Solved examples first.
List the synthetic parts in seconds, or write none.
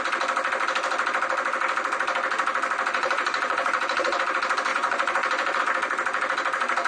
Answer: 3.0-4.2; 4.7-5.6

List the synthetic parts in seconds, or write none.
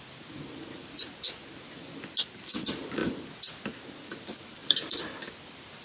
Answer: none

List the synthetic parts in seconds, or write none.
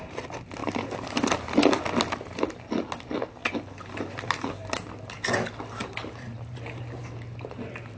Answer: 3.4-4.9; 5.8-7.0